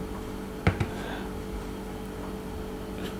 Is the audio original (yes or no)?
yes